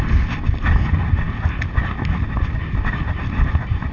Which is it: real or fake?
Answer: real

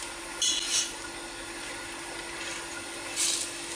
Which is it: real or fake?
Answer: real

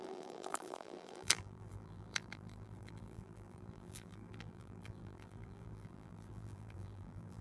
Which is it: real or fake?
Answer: fake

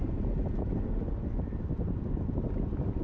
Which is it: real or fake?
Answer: real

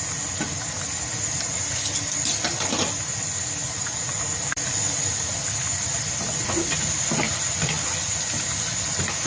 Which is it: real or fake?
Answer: real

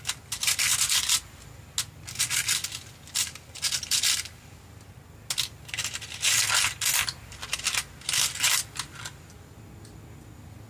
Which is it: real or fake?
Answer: real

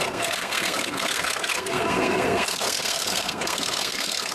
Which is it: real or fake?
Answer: fake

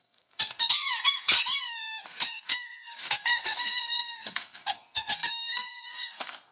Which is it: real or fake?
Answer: fake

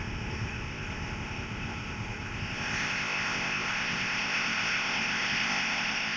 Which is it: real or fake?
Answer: fake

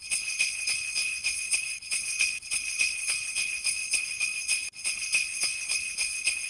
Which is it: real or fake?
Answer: fake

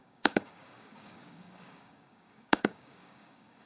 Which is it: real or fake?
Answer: fake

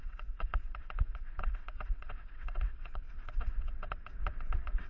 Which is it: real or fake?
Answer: fake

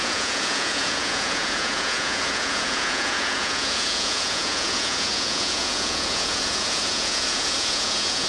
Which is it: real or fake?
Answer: fake